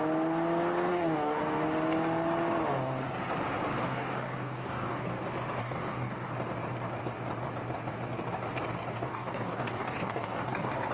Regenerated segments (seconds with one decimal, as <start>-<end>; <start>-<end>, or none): 0.9-1.4; 3.7-5.1; 5.6-6.3; 9.1-10.9